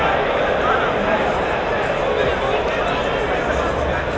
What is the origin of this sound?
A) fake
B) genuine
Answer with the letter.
B